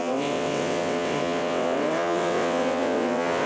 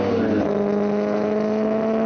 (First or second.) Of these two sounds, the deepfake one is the first